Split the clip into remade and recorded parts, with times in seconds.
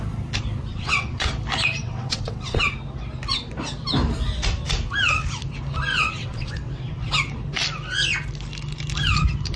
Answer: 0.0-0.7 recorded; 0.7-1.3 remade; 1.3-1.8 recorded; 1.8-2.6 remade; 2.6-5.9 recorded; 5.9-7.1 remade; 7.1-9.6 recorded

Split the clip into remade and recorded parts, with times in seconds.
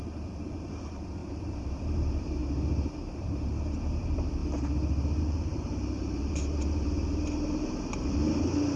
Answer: 0.0-2.4 remade; 2.4-3.1 recorded; 3.1-4.4 remade; 4.4-5.2 recorded; 5.2-8.8 remade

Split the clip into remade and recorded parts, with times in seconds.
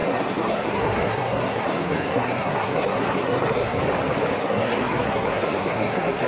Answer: 0.0-3.8 remade; 3.8-4.4 recorded; 4.4-6.3 remade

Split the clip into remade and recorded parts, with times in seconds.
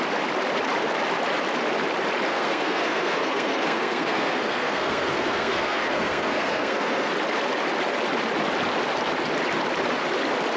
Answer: 0.0-2.3 recorded; 2.3-7.1 remade; 7.1-10.6 recorded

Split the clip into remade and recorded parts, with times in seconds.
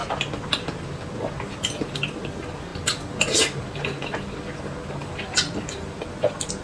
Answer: 0.0-6.6 recorded